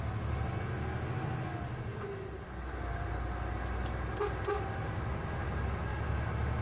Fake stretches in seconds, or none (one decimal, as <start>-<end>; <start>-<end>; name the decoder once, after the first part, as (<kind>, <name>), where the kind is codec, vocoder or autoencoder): none